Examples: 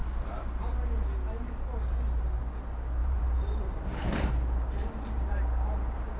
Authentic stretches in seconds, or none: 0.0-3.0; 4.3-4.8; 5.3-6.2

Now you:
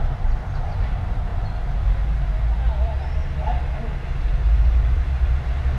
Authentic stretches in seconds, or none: 0.0-4.3

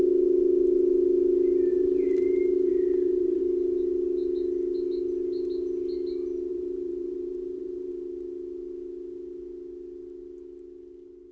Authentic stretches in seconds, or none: 0.0-1.7; 3.4-6.5; 7.9-11.3

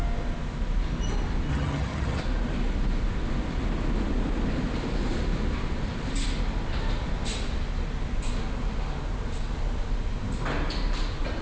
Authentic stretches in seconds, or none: 0.0-1.5; 2.2-11.4

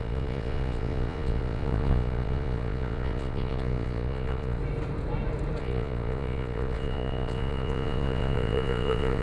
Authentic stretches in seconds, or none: 4.6-5.6

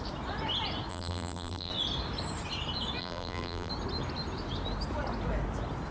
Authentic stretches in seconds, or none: 0.0-0.9; 1.7-3.0; 3.7-5.9

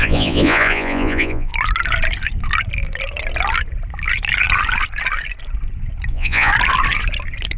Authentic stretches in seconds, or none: 1.5-6.1; 6.5-7.6